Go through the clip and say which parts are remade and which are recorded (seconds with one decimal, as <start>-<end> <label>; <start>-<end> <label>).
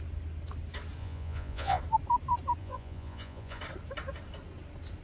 0.0-1.0 recorded; 1.0-1.8 remade; 1.8-2.6 recorded; 2.6-3.6 remade; 3.6-5.0 recorded